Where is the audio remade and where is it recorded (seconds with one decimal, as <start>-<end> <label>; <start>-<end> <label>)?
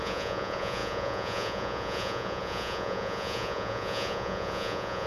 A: 0.0-5.1 remade